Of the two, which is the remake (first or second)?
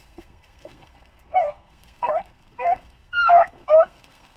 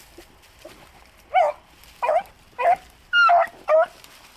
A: first